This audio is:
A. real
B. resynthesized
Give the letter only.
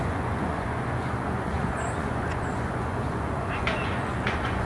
B